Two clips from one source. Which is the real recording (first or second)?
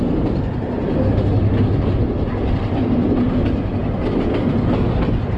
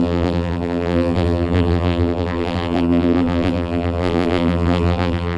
first